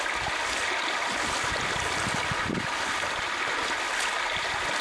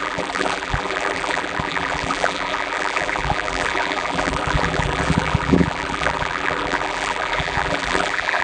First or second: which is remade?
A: second